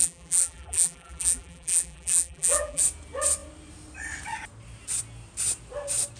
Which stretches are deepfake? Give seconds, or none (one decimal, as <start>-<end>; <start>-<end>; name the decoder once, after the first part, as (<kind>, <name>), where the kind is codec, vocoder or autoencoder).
0.0-2.8 (vocoder, BigVGAN v2)